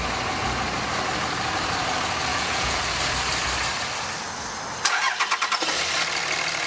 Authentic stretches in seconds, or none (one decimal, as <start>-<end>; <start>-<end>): 0.0-2.3; 2.8-6.7